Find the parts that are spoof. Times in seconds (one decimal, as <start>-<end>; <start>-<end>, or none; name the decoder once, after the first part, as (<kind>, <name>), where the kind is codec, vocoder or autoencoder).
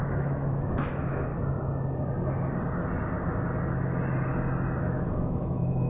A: 0.0-1.3 (autoencoder, DAC-VAE); 4.8-5.9